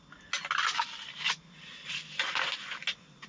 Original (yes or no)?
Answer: yes